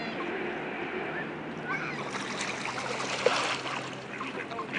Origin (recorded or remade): recorded